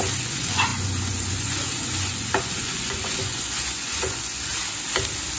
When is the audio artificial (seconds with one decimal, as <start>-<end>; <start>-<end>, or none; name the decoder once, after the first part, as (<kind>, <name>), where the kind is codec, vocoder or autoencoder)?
0.0-4.5 (vocoder, Vocos)